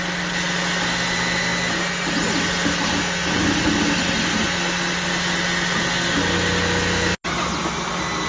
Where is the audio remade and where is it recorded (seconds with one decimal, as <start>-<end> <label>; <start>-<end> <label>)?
0.0-8.3 recorded